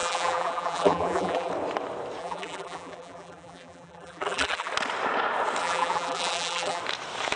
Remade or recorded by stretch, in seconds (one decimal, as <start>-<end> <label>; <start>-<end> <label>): 0.0-1.5 remade; 1.5-2.2 recorded; 2.2-4.7 remade; 4.7-5.6 recorded; 5.6-6.8 remade; 6.8-7.4 recorded

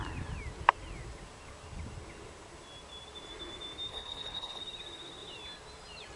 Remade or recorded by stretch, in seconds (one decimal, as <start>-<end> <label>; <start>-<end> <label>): 0.0-3.9 recorded; 3.9-4.6 remade; 4.6-6.2 recorded

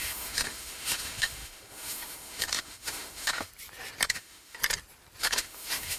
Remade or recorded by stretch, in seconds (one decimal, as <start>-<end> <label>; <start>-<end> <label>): 0.0-3.5 remade; 3.5-4.1 recorded; 4.1-4.6 remade; 4.6-5.2 recorded; 5.2-6.0 remade

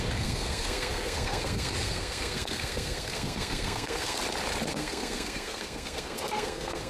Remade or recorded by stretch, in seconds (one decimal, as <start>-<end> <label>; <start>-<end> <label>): 0.0-4.2 remade; 4.2-4.7 recorded; 4.7-6.9 remade

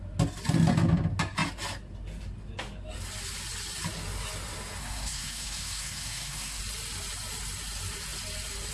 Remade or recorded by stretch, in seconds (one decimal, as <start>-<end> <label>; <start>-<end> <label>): 0.0-4.8 recorded; 4.8-6.6 remade; 6.6-8.7 recorded

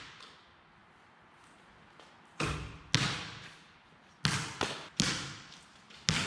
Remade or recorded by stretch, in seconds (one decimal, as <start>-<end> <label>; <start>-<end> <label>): 0.0-6.3 recorded